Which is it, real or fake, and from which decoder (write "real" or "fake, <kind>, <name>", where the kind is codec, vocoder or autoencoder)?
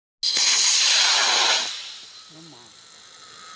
real